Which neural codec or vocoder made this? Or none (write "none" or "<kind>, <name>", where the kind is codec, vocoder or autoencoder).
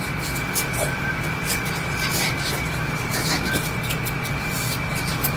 none